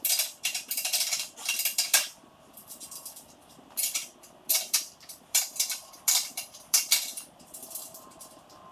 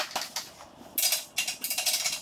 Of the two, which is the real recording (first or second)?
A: second